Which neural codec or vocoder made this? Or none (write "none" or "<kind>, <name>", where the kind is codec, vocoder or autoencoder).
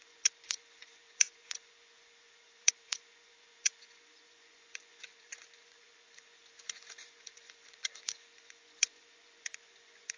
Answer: vocoder, Vocos